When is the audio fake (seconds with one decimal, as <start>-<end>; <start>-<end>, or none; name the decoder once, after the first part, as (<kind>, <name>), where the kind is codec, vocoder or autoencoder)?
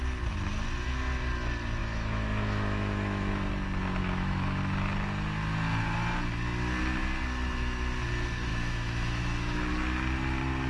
1.8-3.5 (autoencoder, DAC-VAE); 4.0-4.6; 8.5-9.7